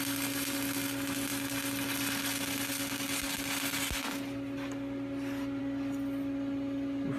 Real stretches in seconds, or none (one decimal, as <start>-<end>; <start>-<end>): 0.0-7.2